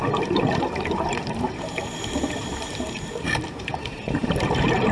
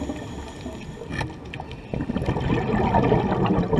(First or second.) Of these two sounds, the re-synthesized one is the first